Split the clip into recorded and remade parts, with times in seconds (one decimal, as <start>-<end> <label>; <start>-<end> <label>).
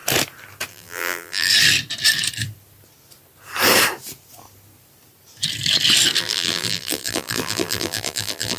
0.0-0.7 recorded; 0.7-1.5 remade; 1.5-6.2 recorded; 6.2-8.6 remade